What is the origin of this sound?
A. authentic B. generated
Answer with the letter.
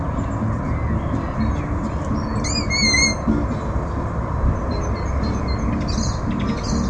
A